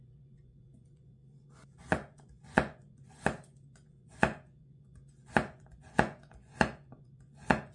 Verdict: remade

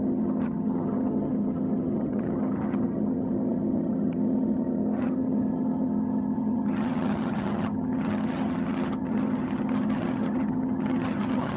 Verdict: remade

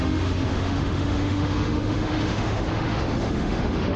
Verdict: remade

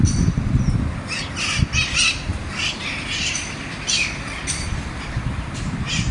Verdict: recorded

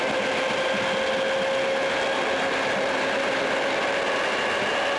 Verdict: recorded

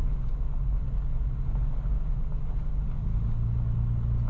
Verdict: recorded